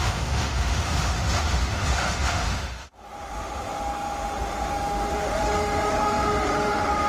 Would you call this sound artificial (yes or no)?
yes